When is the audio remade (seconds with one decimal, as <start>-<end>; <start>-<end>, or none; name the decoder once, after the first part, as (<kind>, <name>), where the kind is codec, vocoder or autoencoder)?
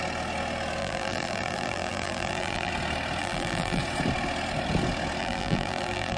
0.8-2.7 (vocoder, BigVGAN v2); 3.2-3.8; 5.2-6.2